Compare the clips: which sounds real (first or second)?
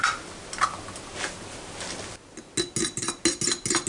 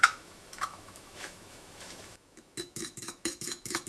first